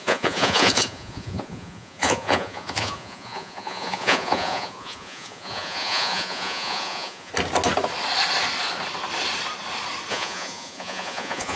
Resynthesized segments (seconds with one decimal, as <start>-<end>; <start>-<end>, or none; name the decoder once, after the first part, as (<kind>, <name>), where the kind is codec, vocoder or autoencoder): 0.0-7.3 (vocoder, Vocos); 10.1-11.6